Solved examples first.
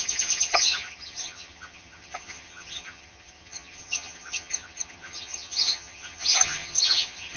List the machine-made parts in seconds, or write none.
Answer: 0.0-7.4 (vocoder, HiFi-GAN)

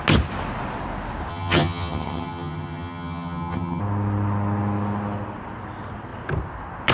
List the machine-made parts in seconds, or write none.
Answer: 1.3-3.8 (vocoder, HiFi-GAN)